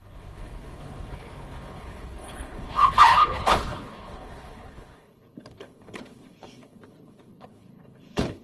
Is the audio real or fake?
fake